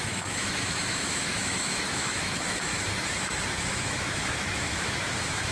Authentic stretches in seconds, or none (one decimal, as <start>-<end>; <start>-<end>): 2.7-3.5